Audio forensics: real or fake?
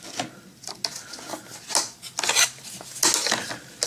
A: real